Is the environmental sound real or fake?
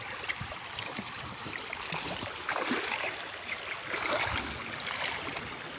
real